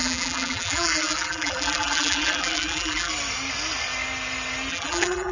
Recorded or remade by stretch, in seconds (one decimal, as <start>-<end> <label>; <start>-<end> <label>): 0.0-3.1 remade; 3.1-4.7 recorded; 4.7-5.3 remade